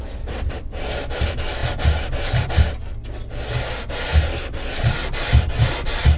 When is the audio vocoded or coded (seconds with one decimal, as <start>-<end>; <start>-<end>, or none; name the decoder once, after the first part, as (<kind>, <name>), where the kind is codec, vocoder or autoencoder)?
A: none